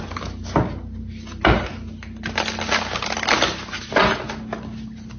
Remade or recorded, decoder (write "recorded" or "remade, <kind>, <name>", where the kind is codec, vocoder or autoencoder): recorded